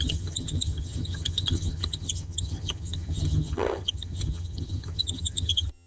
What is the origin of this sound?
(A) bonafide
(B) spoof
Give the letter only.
B